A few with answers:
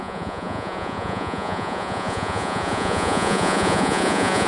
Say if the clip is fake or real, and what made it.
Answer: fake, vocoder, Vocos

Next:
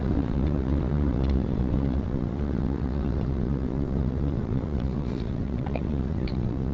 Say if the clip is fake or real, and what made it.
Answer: fake, vocoder, WaveNeXt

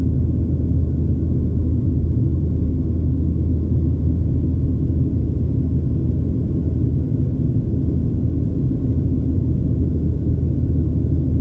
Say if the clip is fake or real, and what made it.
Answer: real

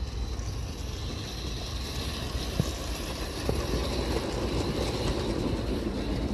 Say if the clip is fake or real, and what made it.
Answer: real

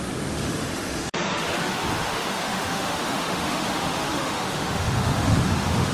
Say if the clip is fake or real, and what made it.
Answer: fake, autoencoder, DAC-VAE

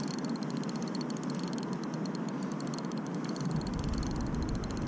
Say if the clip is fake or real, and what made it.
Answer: real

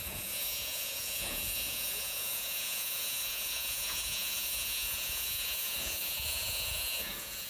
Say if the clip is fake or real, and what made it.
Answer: fake, vocoder, Vocos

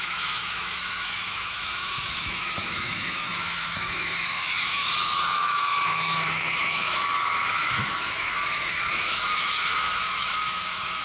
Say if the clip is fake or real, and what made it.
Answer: fake, autoencoder, DAC-VAE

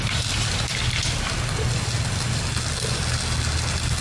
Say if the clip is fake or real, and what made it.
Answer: real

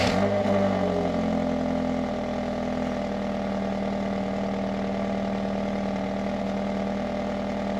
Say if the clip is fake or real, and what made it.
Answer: real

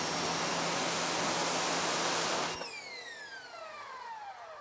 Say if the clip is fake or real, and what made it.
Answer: real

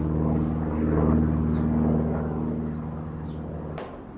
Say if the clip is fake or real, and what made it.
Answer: real